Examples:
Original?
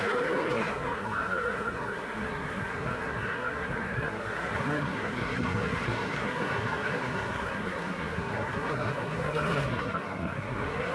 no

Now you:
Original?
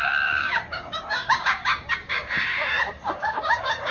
no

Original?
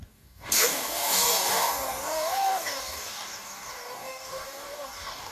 no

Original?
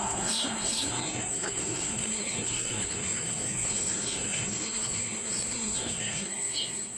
no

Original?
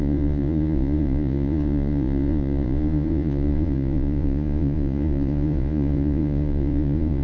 no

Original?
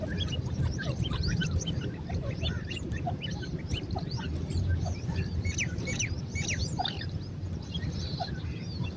no